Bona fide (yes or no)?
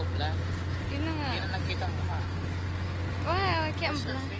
yes